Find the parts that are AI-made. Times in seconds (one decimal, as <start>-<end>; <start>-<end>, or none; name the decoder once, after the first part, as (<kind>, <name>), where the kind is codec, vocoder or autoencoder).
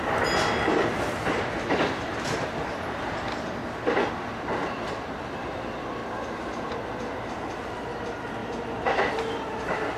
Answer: 0.0-3.6 (vocoder, BigVGAN v2); 4.1-6.0; 6.7-10.0